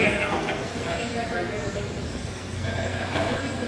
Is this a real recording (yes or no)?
no